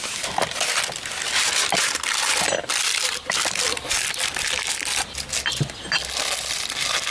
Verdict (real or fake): real